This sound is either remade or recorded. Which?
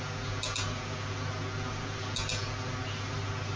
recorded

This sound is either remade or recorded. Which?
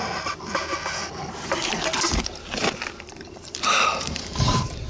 remade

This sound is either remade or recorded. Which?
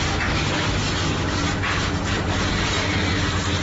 recorded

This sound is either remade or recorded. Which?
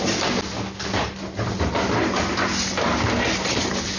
recorded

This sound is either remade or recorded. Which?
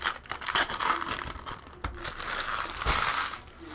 recorded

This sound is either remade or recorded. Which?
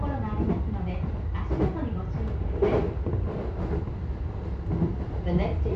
recorded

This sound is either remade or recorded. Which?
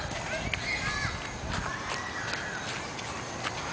recorded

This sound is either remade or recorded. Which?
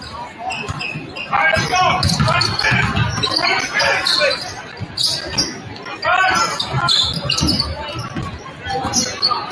recorded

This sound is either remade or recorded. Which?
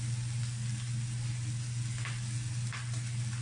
recorded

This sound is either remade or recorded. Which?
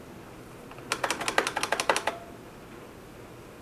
recorded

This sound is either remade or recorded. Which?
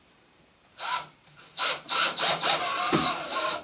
remade